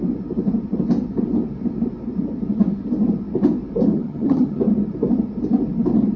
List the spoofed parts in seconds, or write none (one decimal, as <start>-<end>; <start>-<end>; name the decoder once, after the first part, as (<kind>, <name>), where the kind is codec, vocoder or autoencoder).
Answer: 3.9-4.6 (vocoder, HiFi-GAN)